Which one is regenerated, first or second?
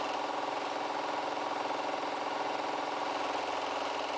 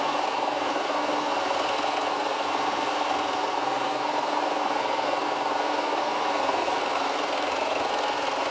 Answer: second